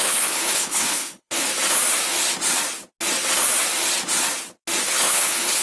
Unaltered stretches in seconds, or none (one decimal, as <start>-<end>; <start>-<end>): 1.5-4.8